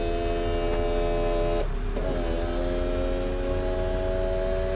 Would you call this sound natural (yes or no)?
yes